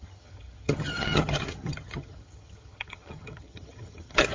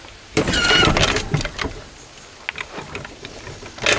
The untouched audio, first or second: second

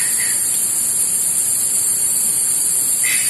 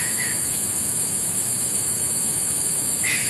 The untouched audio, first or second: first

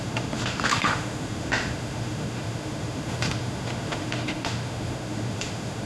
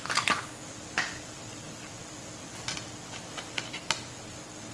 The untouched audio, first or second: second